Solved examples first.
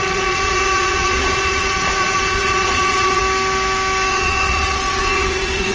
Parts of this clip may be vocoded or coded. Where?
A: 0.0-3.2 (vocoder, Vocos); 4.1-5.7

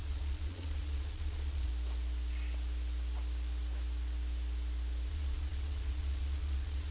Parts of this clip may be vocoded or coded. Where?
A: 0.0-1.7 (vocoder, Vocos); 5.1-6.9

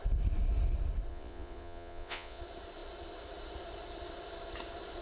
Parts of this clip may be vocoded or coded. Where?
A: 1.1-2.4 (vocoder, Vocos)

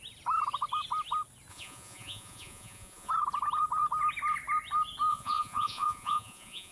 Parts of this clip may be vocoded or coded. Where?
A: 1.5-3.1 (vocoder, Vocos); 5.1-6.7